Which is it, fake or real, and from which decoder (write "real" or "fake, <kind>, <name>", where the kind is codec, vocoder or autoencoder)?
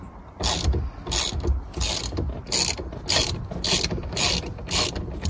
real